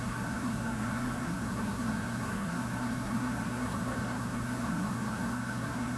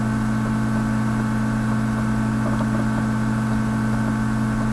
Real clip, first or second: second